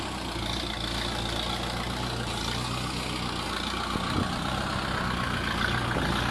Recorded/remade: recorded